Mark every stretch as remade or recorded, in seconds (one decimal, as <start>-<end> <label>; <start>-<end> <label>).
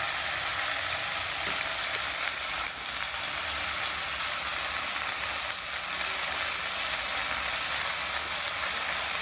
0.0-0.5 recorded; 0.5-3.8 remade; 3.8-9.2 recorded